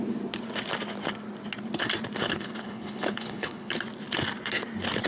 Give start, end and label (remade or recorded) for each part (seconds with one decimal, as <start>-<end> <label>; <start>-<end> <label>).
0.0-2.2 recorded; 2.2-3.7 remade; 3.7-5.1 recorded